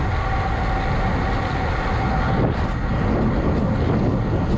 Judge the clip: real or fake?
real